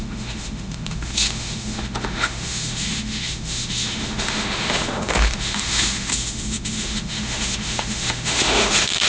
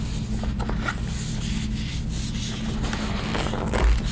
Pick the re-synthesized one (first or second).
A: first